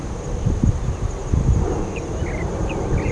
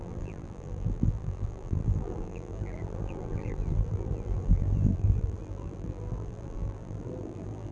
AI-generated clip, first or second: second